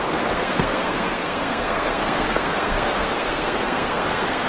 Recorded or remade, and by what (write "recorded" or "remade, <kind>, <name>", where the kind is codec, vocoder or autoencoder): remade, codec, SNAC